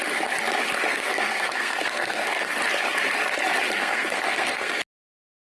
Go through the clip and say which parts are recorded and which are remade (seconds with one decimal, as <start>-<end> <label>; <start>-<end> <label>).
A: 0.0-0.9 recorded; 0.9-2.5 remade; 2.5-3.8 recorded; 3.8-4.8 remade; 4.8-5.5 recorded

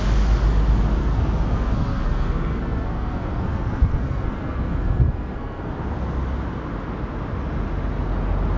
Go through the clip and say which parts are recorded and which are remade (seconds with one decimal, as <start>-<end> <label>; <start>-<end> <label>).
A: 0.0-1.0 recorded; 1.0-5.7 remade; 5.7-8.6 recorded

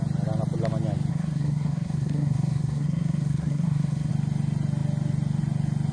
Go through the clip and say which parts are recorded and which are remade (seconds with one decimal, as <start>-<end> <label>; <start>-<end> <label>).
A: 0.0-1.1 recorded; 1.1-4.1 remade; 4.1-5.9 recorded

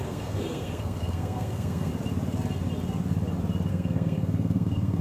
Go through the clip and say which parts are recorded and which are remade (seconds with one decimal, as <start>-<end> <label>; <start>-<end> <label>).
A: 0.0-1.9 remade; 1.9-3.7 recorded; 3.7-5.0 remade

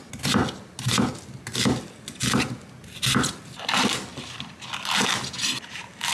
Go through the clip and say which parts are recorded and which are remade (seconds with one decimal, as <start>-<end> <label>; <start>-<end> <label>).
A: 0.0-6.1 recorded